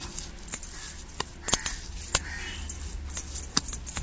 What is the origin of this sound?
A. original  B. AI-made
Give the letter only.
A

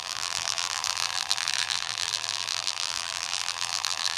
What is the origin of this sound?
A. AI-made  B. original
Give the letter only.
A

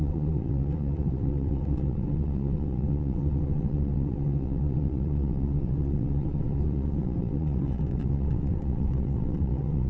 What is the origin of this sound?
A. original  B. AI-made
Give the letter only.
B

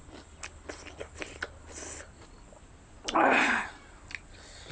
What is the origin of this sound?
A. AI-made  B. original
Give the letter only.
B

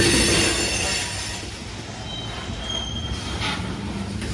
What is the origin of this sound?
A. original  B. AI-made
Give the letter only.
A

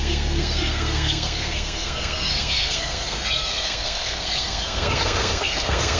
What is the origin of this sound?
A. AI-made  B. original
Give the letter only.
A